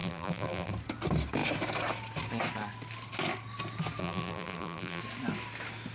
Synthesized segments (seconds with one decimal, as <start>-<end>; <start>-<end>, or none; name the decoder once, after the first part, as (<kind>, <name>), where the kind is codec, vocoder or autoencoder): 0.0-0.7 (vocoder, BigVGAN v2); 4.0-5.0